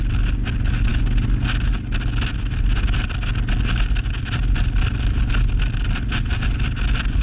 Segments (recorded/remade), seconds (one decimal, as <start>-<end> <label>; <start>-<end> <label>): 0.0-7.2 recorded